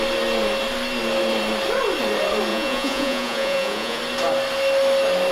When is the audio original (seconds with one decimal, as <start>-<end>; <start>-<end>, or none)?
0.0-2.5; 4.0-5.3